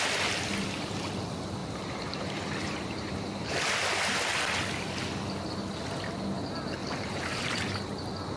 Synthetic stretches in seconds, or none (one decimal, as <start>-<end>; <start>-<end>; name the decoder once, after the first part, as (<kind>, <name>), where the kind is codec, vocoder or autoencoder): 1.6-3.6 (vocoder, BigVGAN v2); 6.8-7.8

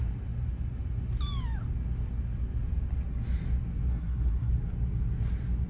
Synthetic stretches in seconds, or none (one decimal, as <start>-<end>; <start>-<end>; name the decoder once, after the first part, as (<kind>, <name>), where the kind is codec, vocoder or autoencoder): 3.9-4.5 (codec, SNAC)